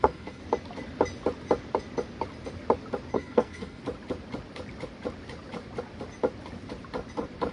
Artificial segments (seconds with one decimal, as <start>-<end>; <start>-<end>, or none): 0.0-0.4; 3.1-3.8

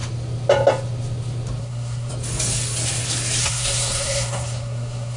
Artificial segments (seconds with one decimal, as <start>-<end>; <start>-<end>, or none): 1.6-2.1; 3.4-5.2

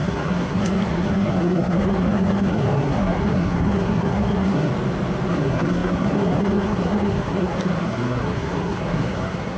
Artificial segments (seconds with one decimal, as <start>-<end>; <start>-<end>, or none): 0.0-4.7; 5.3-9.6

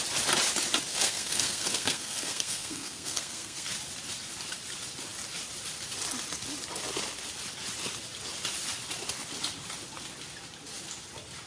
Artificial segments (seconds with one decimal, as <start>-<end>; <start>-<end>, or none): 0.9-3.7

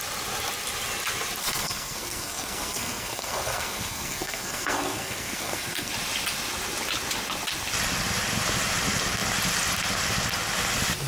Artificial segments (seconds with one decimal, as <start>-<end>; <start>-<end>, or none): 1.4-5.9

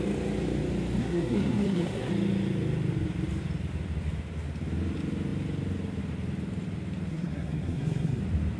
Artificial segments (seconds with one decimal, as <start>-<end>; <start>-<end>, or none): 1.0-2.1; 7.1-8.2